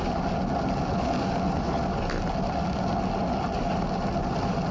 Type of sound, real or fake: real